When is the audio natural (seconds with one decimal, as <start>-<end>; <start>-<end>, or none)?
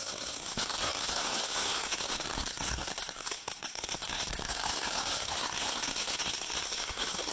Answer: none